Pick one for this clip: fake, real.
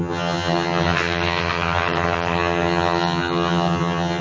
fake